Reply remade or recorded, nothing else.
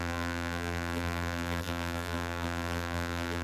remade